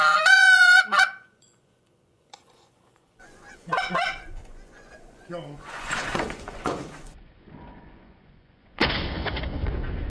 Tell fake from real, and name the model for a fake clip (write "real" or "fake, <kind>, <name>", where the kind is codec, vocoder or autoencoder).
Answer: fake, vocoder, Vocos